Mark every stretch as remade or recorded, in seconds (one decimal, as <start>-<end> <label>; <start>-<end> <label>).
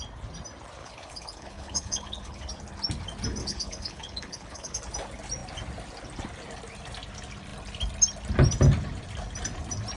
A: 0.0-0.8 recorded; 0.8-2.5 remade; 2.5-3.4 recorded; 3.4-4.8 remade; 4.8-10.0 recorded